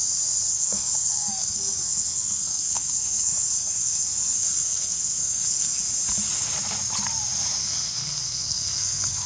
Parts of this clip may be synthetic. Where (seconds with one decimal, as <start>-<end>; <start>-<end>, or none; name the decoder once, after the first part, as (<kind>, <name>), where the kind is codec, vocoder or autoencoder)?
0.5-5.8 (codec, SNAC); 7.6-9.3